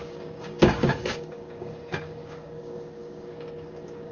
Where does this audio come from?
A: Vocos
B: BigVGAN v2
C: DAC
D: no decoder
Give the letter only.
C